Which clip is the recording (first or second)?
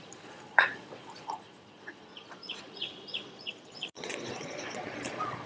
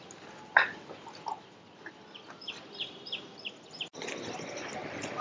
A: second